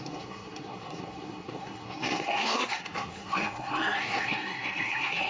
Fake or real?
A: fake